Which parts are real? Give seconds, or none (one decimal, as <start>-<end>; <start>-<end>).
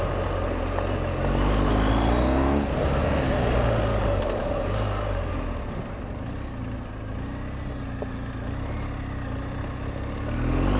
0.0-3.9; 5.3-10.8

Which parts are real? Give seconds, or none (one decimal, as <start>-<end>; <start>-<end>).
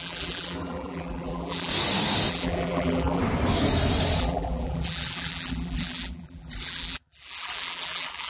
1.7-2.3; 3.2-4.2